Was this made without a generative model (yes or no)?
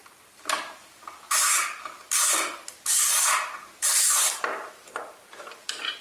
no